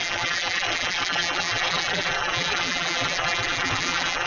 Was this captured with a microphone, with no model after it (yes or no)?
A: no